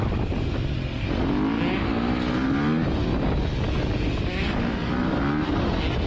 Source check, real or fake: real